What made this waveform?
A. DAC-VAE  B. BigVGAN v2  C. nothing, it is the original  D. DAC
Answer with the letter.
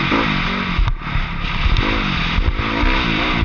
C